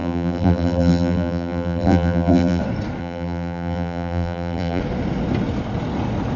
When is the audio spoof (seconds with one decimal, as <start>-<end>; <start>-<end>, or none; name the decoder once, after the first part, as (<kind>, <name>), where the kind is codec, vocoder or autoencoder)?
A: 0.0-2.6 (vocoder, BigVGAN v2); 3.0-4.8